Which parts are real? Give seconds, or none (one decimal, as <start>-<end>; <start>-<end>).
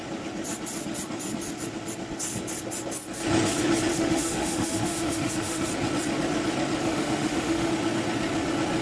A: 0.0-3.9; 5.7-6.8; 7.7-8.8